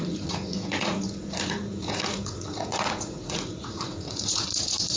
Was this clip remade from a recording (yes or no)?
yes